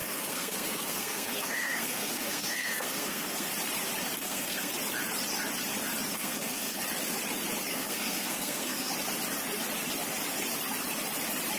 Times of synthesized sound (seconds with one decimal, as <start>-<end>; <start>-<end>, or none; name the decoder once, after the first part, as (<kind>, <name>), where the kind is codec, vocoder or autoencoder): 0.0-3.5 (codec, SNAC); 4.2-4.7; 6.1-6.8; 7.7-8.9